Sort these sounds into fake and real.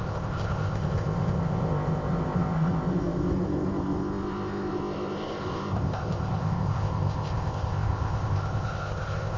fake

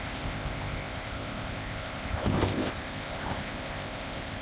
fake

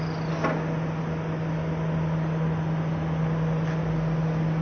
real